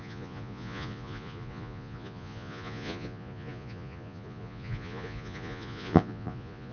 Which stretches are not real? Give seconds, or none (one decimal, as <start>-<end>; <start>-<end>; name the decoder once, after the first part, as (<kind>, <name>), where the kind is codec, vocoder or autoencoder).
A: 0.0-6.7 (vocoder, Vocos)